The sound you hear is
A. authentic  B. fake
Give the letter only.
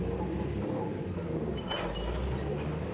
A